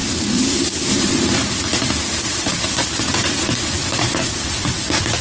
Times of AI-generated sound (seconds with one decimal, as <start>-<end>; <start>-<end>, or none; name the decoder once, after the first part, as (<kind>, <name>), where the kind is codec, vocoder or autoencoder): 0.0-5.2 (vocoder, BigVGAN v2)